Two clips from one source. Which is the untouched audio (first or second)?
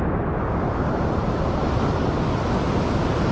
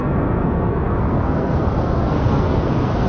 first